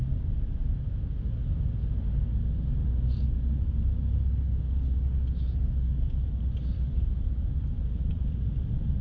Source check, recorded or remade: recorded